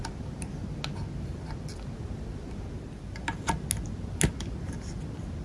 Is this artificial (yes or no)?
no